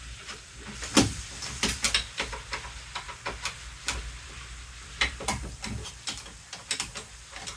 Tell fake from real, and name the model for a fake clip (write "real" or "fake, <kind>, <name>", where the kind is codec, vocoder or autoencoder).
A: real